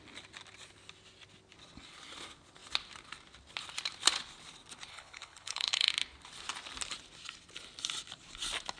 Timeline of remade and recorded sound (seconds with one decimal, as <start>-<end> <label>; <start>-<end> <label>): 0.0-4.9 recorded; 4.9-5.9 remade; 5.9-8.8 recorded